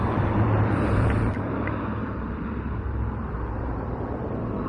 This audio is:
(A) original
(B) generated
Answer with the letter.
B